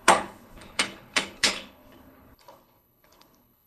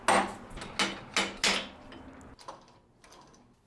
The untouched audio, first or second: second